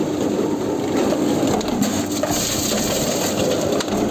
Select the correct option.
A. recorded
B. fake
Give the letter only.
A